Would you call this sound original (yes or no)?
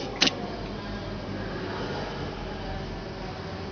yes